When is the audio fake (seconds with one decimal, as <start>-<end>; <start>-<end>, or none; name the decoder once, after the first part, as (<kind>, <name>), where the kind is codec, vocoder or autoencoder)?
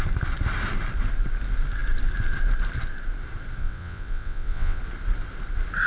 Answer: 3.6-4.8 (vocoder, WaveNeXt)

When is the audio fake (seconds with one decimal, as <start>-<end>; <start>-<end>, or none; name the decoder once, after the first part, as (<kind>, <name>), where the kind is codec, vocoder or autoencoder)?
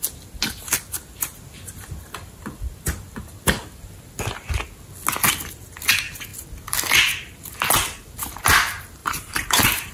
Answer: 9.0-9.9 (vocoder, BigVGAN v2)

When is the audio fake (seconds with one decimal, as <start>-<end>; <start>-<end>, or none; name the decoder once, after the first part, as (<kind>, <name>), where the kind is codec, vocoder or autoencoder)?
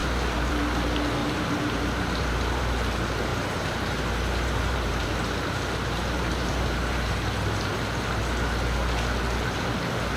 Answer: 0.0-0.5 (vocoder, BigVGAN v2); 1.2-2.6; 3.3-7.7